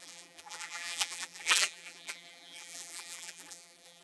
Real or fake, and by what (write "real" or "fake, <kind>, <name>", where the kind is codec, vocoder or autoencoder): fake, vocoder, BigVGAN v2